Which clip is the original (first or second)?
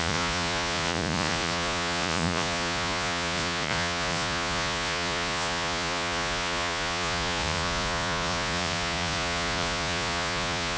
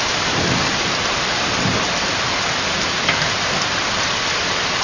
second